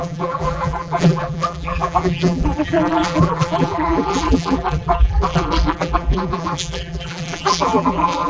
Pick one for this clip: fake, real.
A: fake